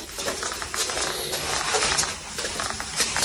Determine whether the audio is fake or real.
real